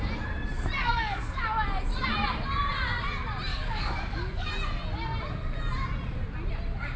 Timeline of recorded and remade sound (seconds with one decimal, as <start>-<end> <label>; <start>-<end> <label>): 0.0-0.8 recorded; 0.8-1.4 remade; 1.4-3.5 recorded; 3.5-4.5 remade; 4.5-7.0 recorded

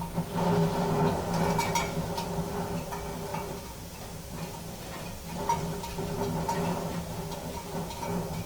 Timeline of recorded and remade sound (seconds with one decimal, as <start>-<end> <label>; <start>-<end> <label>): 0.0-8.5 recorded

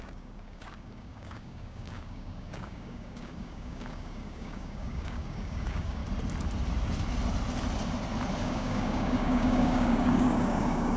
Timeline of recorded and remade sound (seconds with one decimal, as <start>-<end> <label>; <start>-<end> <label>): 0.0-6.0 remade; 6.0-8.4 recorded; 8.4-11.0 remade

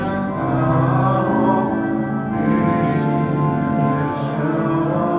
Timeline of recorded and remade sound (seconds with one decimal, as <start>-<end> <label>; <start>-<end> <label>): 0.0-5.2 recorded

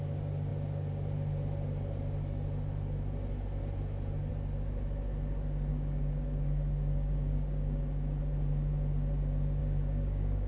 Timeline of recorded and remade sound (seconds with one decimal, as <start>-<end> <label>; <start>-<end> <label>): 0.0-5.7 recorded; 5.7-7.8 remade; 7.8-9.6 recorded; 9.6-10.5 remade

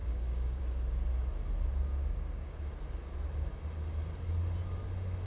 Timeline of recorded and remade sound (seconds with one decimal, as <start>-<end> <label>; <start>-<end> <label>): 0.0-0.6 remade; 0.6-2.0 recorded; 2.0-2.6 remade; 2.6-5.3 recorded